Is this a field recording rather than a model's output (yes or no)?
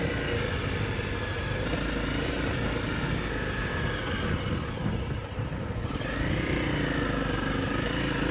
yes